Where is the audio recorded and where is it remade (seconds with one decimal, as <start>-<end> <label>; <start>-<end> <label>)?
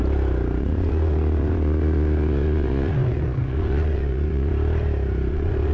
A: 0.0-0.6 recorded; 0.6-4.5 remade; 4.5-5.3 recorded; 5.3-5.7 remade